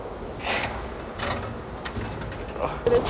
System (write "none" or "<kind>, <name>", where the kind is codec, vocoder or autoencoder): none